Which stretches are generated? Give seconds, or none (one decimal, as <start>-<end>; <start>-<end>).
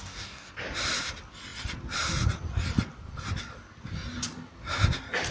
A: 0.0-0.5